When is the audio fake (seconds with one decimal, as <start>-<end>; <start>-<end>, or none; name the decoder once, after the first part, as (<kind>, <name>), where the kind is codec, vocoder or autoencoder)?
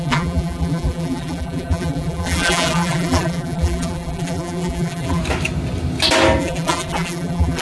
0.0-5.2 (vocoder, BigVGAN v2); 6.4-7.6